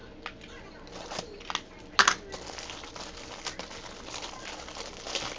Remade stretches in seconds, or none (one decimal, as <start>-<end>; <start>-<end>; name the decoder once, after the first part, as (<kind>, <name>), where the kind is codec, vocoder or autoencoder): none